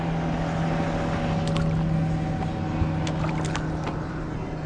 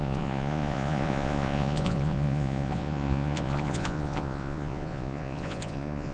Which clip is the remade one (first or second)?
second